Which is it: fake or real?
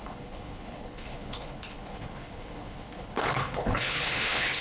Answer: fake